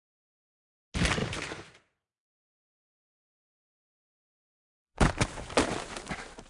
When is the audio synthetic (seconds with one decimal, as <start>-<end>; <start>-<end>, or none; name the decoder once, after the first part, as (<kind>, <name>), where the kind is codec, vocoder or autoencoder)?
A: 1.2-5.1 (vocoder, BigVGAN v2)